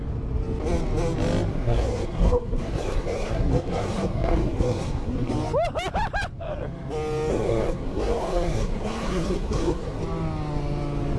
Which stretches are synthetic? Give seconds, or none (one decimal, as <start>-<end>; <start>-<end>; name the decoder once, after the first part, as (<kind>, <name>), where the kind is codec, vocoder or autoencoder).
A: 1.5-5.3 (codec, SNAC); 7.3-10.0